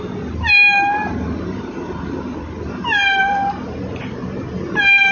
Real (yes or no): yes